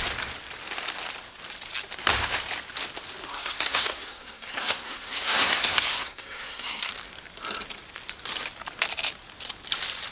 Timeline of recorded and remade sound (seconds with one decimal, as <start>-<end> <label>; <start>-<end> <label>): 0.0-3.3 recorded; 3.3-6.9 remade; 6.9-10.1 recorded